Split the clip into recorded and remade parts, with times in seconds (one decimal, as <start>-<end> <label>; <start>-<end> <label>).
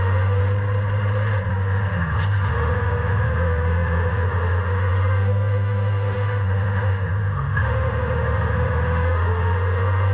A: 0.0-0.4 remade; 0.4-1.5 recorded; 1.5-10.1 remade